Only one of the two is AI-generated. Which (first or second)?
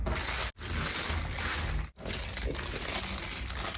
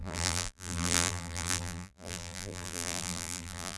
second